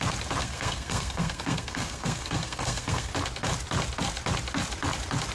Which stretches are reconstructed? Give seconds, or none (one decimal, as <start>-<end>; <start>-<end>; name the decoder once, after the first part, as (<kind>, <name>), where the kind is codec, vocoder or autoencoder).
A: 0.4-3.1 (codec, SNAC)